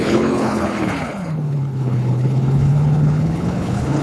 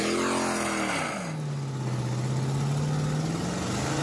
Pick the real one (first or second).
second